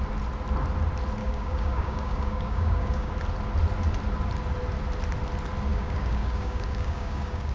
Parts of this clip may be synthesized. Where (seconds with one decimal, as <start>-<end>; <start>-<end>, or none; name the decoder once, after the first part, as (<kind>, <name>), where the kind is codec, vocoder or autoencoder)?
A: 1.2-3.1 (codec, DAC); 5.7-7.5

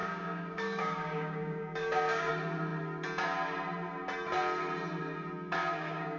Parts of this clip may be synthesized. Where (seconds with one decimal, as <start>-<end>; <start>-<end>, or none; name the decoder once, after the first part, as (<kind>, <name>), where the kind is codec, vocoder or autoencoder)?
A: 0.0-2.3 (codec, DAC); 5.6-6.2

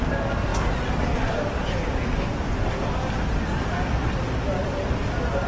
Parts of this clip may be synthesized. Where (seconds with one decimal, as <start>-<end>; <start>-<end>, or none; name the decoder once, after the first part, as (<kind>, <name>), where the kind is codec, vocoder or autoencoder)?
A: none

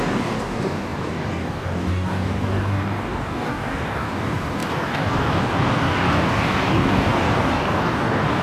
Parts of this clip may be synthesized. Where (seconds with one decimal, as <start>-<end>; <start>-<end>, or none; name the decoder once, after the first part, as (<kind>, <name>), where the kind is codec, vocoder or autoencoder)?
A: 0.0-8.4 (codec, DAC)

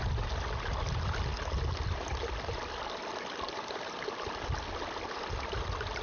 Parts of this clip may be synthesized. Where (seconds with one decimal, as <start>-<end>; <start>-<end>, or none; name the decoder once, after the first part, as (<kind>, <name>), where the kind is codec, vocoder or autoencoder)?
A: none

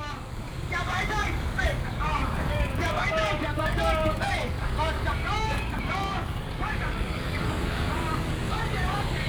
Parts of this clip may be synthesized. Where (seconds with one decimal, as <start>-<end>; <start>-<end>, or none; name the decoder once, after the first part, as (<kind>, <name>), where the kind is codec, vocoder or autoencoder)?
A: 0.0-9.3 (codec, DAC)